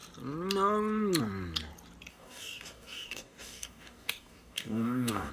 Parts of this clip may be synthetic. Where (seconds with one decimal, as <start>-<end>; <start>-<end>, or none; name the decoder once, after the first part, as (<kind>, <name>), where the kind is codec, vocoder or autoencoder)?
2.1-5.3 (codec, DAC)